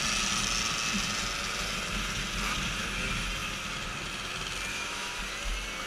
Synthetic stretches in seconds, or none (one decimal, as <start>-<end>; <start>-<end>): 4.7-5.2